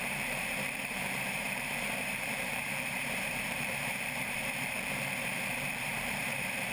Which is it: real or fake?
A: fake